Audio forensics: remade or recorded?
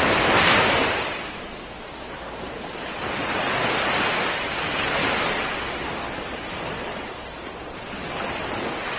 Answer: recorded